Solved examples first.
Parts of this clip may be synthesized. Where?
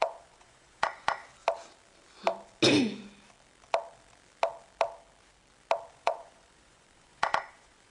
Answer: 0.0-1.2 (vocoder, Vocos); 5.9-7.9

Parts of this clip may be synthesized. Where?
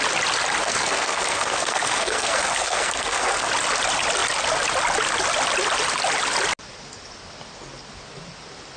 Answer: 0.6-3.5 (codec, SNAC)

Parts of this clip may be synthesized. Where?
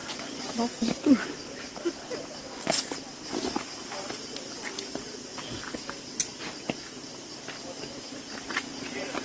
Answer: 0.0-0.5 (vocoder, Vocos)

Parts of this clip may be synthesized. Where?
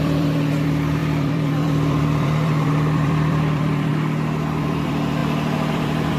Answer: 0.0-3.9 (vocoder, BigVGAN v2); 4.6-5.2; 5.7-6.2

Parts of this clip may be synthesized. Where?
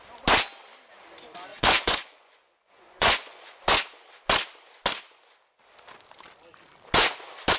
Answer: 1.5-3.6 (vocoder, Vocos)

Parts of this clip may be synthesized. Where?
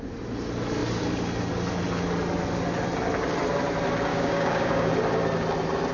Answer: 4.1-4.9 (codec, DAC)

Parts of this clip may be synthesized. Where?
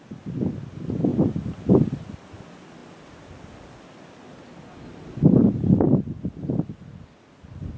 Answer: none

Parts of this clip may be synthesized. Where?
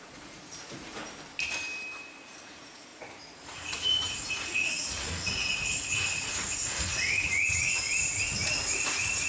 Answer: 0.0-1.0 (vocoder, Vocos); 2.0-9.3